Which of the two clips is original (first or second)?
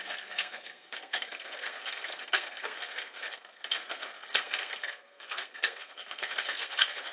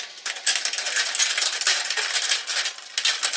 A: second